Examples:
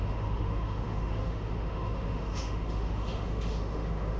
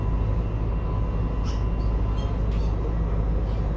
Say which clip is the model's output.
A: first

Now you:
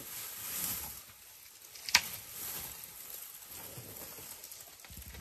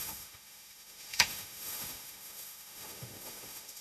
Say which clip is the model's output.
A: second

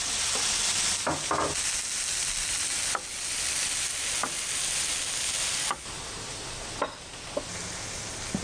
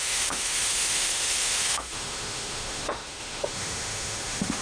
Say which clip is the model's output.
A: second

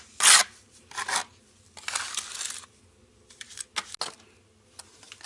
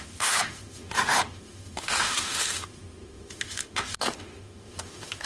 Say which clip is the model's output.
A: second